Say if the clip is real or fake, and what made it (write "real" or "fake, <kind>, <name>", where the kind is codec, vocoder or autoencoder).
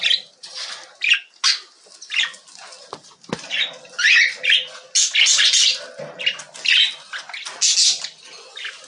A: real